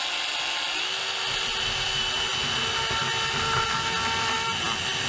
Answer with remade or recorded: recorded